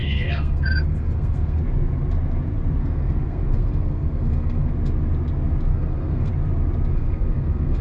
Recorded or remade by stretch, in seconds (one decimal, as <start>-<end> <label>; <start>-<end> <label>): 0.0-1.6 remade; 1.6-2.8 recorded; 2.8-4.7 remade; 4.7-5.7 recorded; 5.7-6.3 remade; 6.3-6.9 recorded; 6.9-7.8 remade